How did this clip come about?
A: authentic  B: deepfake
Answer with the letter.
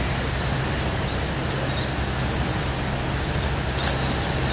A